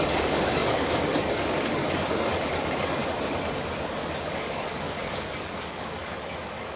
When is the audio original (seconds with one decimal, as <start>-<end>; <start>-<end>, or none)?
3.0-4.2